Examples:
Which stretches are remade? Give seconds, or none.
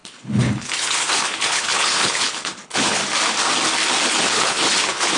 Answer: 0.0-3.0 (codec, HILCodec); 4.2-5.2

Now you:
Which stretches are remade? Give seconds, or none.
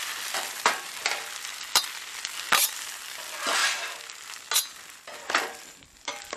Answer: 0.0-3.6 (vocoder, BigVGAN v2); 5.3-6.4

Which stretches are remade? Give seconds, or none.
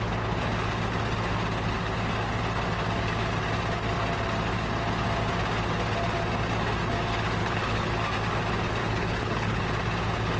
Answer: 7.4-7.9 (codec, HILCodec); 8.8-9.6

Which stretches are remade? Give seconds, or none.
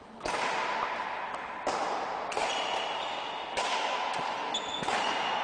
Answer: 2.3-2.9 (vocoder, BigVGAN v2)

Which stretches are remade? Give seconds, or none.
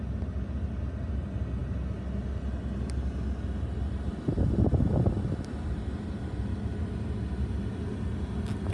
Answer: none